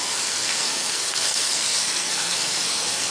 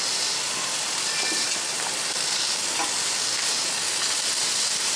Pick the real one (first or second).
second